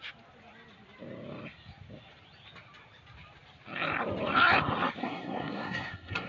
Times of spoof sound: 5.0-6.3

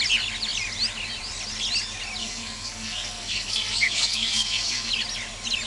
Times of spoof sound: 2.2-4.9

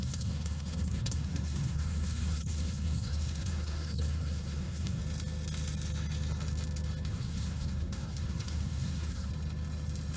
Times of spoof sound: 0.0-5.0; 7.1-9.3

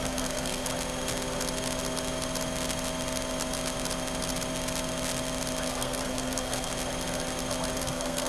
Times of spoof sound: 0.0-0.7; 5.7-6.7; 7.8-8.3

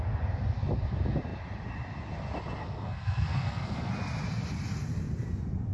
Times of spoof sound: 2.6-3.9